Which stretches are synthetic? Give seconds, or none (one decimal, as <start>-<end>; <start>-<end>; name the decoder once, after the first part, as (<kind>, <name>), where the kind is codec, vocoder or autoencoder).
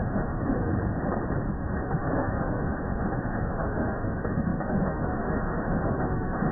0.0-0.7 (autoencoder, DAC-VAE); 1.5-6.5